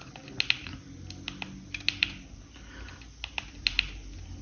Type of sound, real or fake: real